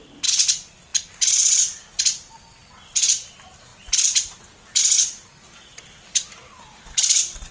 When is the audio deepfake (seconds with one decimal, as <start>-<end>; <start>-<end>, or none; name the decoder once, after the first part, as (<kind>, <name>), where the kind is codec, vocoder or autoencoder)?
none